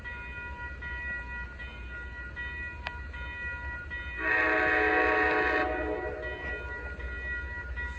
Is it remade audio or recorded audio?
recorded